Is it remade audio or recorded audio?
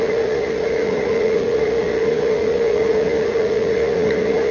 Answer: remade